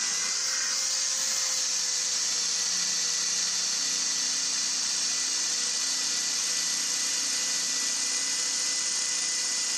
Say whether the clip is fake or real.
real